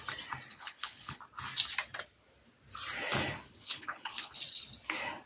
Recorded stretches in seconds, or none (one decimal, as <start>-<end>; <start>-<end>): 0.0-0.5; 1.2-3.4; 4.4-5.3